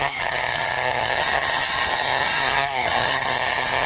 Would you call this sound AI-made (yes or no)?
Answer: yes